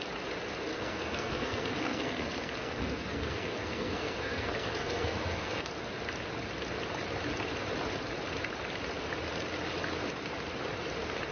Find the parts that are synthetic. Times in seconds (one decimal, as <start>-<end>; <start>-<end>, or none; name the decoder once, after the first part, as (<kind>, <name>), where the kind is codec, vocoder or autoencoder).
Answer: 0.7-5.7 (codec, SNAC)